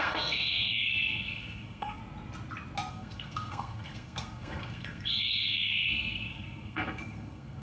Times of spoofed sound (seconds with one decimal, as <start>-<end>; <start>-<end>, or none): 0.0-2.0; 2.9-7.6